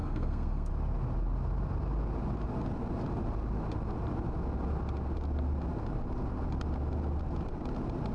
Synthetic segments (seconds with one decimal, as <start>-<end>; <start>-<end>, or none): 0.0-0.7